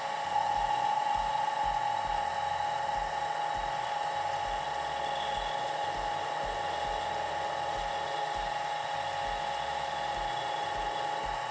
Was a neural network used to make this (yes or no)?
no